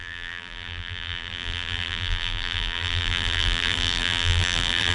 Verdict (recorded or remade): remade